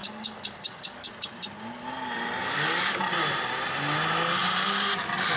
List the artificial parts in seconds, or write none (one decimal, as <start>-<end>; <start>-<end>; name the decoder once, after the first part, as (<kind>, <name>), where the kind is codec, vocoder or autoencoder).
0.0-1.1 (codec, DAC); 2.4-3.0